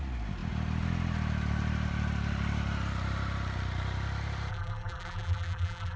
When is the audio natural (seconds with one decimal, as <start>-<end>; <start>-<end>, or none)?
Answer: 0.0-4.5